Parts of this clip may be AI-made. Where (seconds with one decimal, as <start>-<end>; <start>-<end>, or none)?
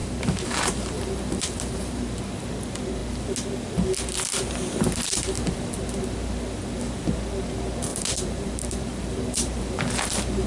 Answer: 0.0-2.0; 7.9-9.6